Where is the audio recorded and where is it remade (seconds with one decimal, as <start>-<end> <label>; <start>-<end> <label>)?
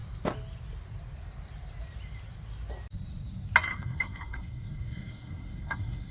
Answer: 0.0-3.6 recorded; 3.6-6.1 remade